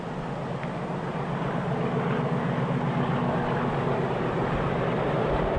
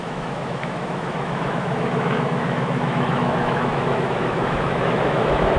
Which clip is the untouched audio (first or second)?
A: first